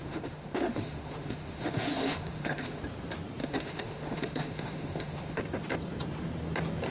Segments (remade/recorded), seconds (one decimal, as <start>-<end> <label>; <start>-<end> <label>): 0.0-2.8 remade; 2.8-3.4 recorded; 3.4-5.4 remade; 5.4-6.9 recorded